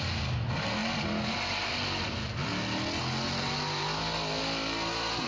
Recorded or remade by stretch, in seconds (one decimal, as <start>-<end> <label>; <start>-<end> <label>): 0.0-5.3 recorded